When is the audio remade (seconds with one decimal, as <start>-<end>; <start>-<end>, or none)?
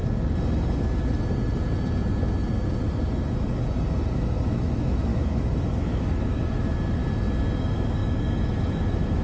4.1-7.0; 7.6-9.2